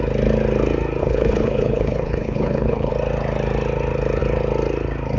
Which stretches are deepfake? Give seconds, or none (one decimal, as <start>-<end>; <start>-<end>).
1.0-2.9